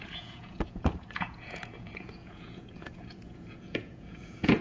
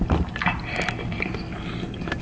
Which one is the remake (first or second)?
first